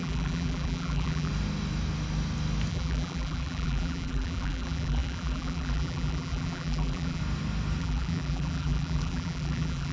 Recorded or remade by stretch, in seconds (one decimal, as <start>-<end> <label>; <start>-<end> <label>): 0.0-1.3 remade; 1.3-2.7 recorded; 2.7-7.2 remade; 7.2-7.8 recorded; 7.8-9.9 remade